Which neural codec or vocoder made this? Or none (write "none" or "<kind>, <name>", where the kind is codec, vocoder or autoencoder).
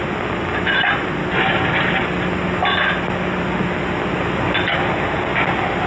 none